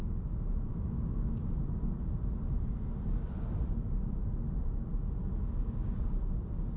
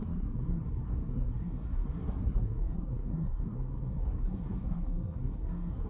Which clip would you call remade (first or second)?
second